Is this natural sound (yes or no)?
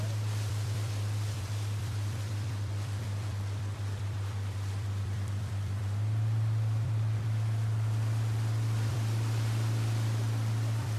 no